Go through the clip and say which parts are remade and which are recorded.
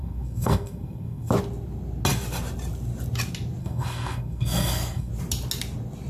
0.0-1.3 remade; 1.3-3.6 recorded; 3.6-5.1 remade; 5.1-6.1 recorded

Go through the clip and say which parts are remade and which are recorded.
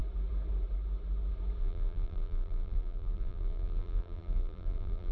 0.0-1.6 recorded; 1.6-5.1 remade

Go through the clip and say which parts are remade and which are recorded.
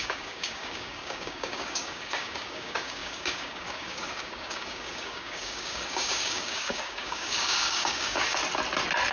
0.0-8.4 remade; 8.4-9.1 recorded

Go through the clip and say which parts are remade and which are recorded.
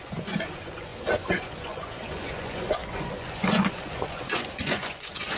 0.0-5.4 remade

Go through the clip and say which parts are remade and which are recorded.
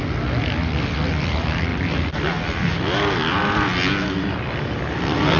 0.0-1.7 recorded; 1.7-2.7 remade; 2.7-5.4 recorded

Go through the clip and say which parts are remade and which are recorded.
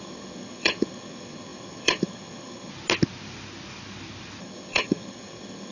0.0-2.7 remade; 2.7-4.4 recorded; 4.4-5.7 remade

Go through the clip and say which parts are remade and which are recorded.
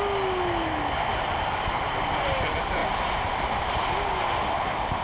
0.0-5.0 recorded